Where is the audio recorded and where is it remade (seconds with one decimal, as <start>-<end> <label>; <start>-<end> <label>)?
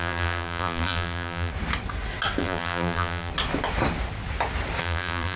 0.0-1.5 remade; 1.5-2.4 recorded; 2.4-3.3 remade; 3.3-4.8 recorded; 4.8-5.4 remade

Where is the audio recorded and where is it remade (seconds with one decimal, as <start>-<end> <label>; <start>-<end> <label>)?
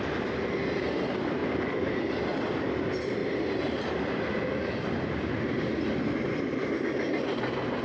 0.0-1.4 recorded; 1.4-2.0 remade; 2.0-3.2 recorded; 3.2-5.3 remade; 5.3-5.9 recorded; 5.9-6.8 remade; 6.8-7.8 recorded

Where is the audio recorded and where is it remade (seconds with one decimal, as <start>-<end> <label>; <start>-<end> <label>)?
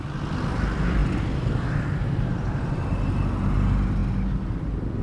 0.0-4.0 remade; 4.0-5.0 recorded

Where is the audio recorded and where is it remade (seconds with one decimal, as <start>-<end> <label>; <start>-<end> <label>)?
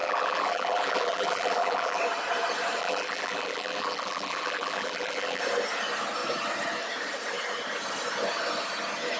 0.0-2.0 remade; 2.0-2.8 recorded; 2.8-5.4 remade; 5.4-9.2 recorded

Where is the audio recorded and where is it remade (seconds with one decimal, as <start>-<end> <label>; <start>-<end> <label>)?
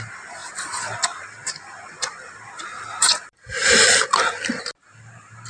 0.0-5.5 recorded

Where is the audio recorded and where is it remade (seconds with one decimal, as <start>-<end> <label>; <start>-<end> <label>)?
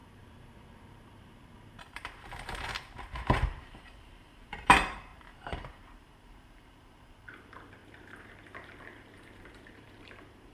0.0-10.5 remade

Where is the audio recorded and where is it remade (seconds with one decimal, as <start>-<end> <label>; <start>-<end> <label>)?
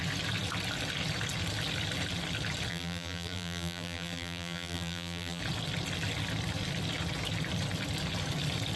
0.0-2.7 recorded; 2.7-5.4 remade; 5.4-8.8 recorded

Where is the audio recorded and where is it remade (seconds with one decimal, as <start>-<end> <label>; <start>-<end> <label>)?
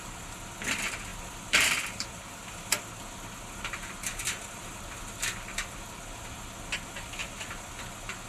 0.0-1.1 recorded; 1.1-2.7 remade; 2.7-4.1 recorded; 4.1-6.0 remade; 6.0-7.2 recorded; 7.2-7.7 remade; 7.7-8.3 recorded